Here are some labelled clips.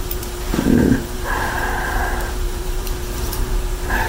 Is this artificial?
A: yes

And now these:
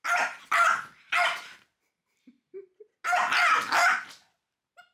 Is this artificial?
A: no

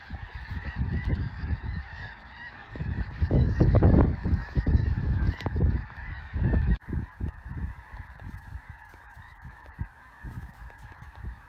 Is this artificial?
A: yes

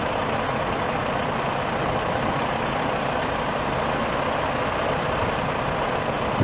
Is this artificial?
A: no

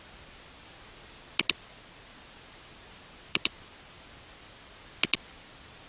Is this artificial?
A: no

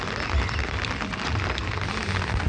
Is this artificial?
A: no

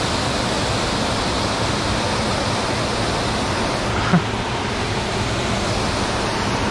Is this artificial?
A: no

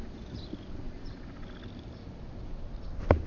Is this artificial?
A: no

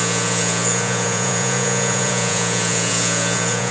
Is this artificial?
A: yes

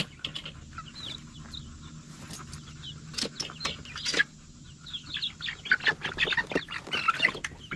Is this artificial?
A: no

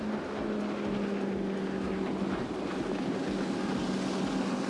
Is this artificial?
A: no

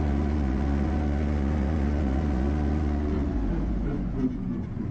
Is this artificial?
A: yes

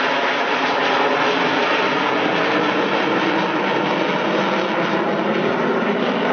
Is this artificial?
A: no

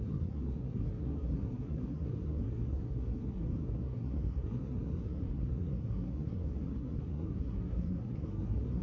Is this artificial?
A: yes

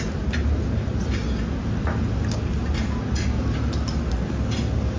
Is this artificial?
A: no